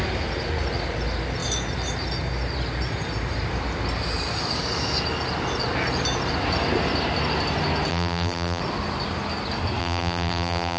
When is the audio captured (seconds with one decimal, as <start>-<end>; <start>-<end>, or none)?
0.0-7.9; 8.6-9.8